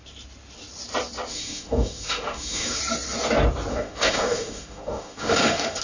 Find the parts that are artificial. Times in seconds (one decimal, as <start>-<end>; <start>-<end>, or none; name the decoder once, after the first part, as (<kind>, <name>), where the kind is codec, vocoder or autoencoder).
1.3-2.8 (autoencoder, DAC-VAE); 3.7-5.8